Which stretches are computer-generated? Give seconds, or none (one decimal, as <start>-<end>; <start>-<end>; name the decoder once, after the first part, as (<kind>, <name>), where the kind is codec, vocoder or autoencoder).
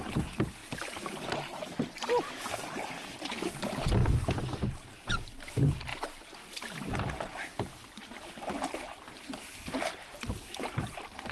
none